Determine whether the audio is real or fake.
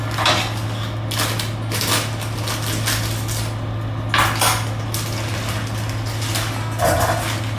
real